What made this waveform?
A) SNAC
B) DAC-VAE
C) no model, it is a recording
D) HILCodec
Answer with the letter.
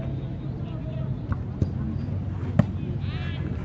C